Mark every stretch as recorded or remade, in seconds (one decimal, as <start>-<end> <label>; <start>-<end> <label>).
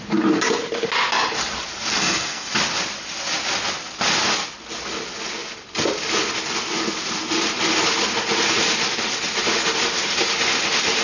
0.0-1.9 recorded; 1.9-2.5 remade; 2.5-11.0 recorded